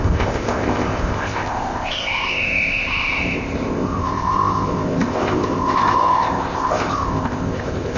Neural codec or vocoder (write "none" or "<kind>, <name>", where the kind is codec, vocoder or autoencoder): codec, ZipCodec